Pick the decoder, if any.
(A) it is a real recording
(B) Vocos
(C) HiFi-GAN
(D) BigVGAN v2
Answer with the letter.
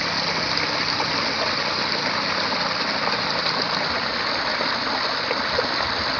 A